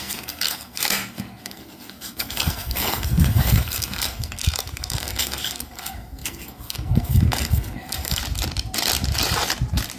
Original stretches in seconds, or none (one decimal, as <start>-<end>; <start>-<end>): 8.2-10.0